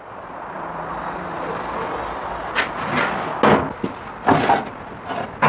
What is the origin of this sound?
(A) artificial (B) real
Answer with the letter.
B